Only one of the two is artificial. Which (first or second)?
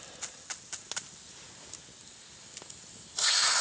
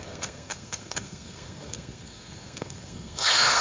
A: second